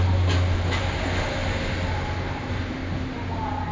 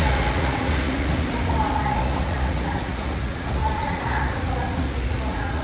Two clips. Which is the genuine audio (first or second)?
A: first